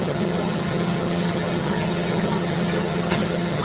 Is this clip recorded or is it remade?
remade